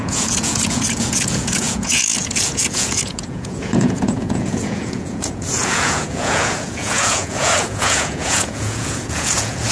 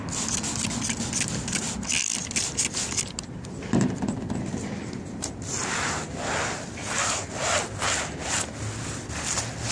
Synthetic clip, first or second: first